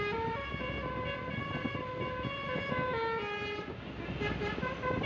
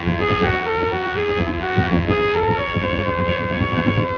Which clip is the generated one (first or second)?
second